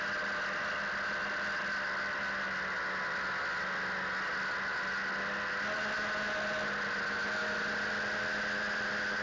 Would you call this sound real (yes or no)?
yes